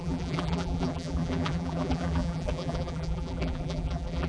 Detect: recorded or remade remade